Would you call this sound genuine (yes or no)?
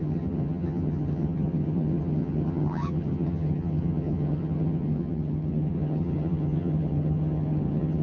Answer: no